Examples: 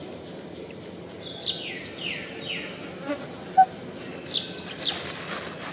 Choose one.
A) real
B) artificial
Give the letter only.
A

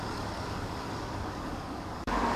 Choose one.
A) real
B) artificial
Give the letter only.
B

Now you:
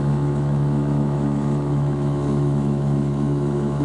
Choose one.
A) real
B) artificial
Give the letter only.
B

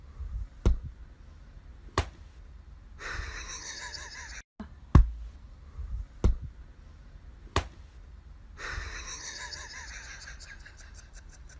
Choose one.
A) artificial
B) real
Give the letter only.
B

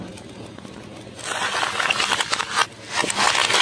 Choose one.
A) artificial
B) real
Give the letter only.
B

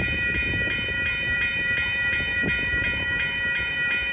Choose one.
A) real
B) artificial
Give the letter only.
B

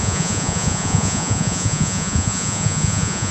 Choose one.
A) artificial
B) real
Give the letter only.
A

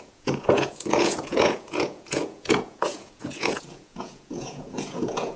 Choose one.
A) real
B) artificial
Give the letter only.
B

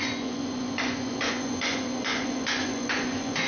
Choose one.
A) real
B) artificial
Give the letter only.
B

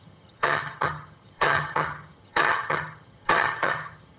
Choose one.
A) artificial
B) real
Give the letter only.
A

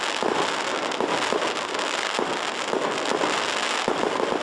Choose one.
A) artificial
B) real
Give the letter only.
B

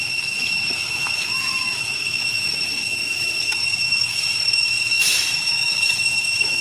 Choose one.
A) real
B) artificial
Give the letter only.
B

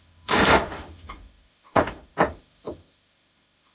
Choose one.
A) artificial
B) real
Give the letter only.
A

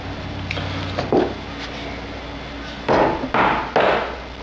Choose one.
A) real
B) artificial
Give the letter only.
A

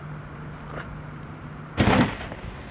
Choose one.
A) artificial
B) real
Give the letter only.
A